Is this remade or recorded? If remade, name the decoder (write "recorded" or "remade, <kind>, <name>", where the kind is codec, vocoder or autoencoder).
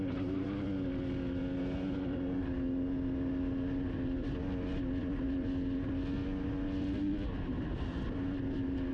recorded